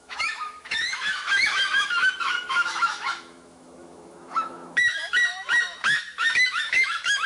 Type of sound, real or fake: fake